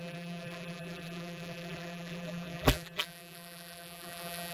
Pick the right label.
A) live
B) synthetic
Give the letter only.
B